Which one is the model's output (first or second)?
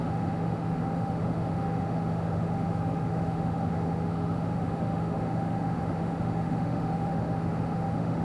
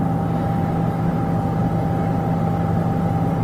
first